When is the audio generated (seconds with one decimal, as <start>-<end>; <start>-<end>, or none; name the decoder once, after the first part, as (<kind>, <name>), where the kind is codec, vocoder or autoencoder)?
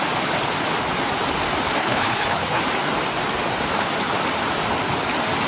1.8-2.6 (codec, HILCodec)